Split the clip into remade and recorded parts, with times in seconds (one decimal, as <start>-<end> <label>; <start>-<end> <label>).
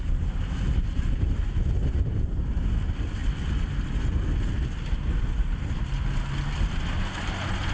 0.0-7.7 recorded